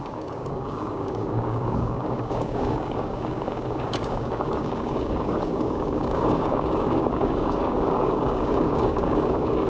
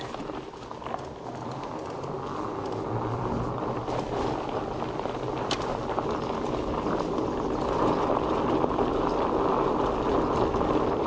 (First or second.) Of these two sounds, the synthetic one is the first